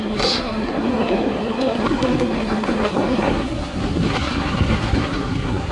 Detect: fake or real fake